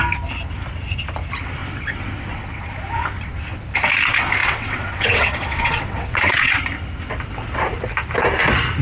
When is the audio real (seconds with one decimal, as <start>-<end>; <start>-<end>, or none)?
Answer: 0.0-1.6; 2.7-4.4; 6.6-8.8